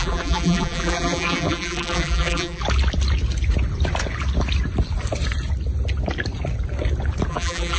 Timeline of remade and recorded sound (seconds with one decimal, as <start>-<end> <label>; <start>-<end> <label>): 0.0-2.6 remade; 2.6-7.3 recorded; 7.3-7.8 remade